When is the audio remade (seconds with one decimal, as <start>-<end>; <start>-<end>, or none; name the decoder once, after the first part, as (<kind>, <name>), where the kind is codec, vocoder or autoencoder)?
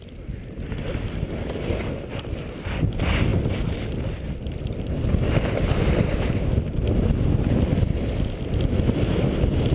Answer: none